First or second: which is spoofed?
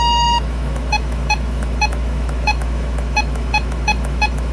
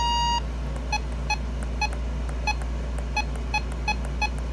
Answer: first